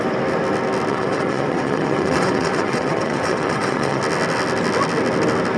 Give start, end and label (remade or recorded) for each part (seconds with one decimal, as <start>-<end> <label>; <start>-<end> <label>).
0.0-0.9 recorded; 0.9-4.0 remade; 4.0-5.6 recorded